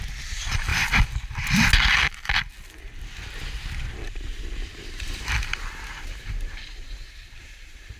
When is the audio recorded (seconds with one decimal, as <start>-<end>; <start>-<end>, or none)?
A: 0.7-3.3